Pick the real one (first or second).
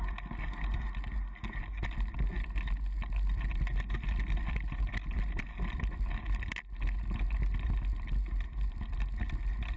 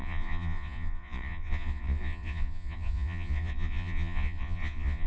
first